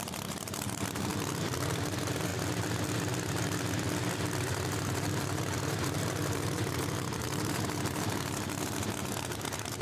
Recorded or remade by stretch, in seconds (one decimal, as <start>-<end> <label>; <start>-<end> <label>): 0.0-1.1 remade; 1.1-1.7 recorded; 1.7-2.3 remade; 2.3-4.4 recorded; 4.4-9.8 remade